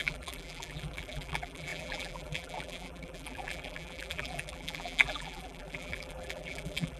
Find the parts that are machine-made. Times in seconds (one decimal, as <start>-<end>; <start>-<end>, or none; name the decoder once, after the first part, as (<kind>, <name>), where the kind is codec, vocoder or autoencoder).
0.0-7.0 (vocoder, BigVGAN v2)